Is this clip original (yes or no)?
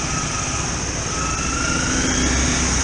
yes